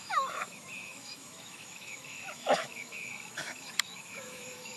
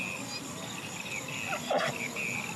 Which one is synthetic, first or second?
first